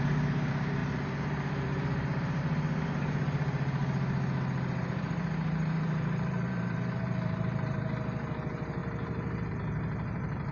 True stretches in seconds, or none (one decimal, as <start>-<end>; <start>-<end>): 3.8-4.8